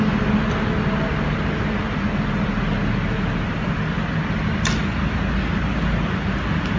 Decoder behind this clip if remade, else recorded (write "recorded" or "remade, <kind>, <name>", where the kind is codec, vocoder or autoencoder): recorded